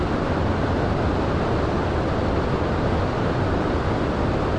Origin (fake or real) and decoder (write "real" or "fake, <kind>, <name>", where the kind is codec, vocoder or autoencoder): real